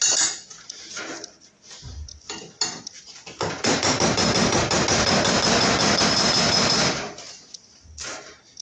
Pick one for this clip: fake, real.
real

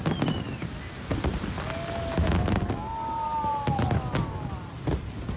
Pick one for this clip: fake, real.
real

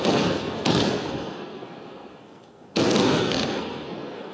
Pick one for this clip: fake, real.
fake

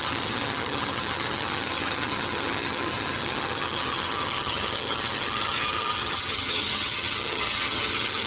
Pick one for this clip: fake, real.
fake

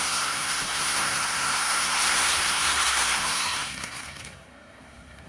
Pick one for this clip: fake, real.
fake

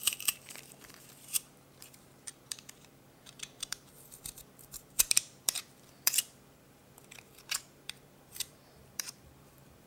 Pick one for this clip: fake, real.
fake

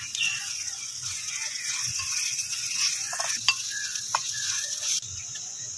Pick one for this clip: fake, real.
fake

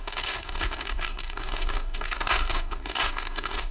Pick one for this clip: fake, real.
fake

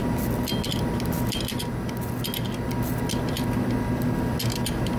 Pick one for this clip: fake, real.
real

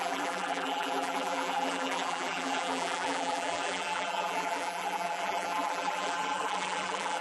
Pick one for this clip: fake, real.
fake